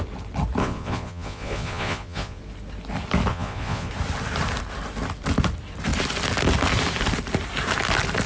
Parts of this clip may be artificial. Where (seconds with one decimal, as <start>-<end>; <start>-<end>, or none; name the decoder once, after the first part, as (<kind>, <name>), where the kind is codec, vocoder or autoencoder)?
0.6-2.4 (vocoder, Vocos); 3.3-3.9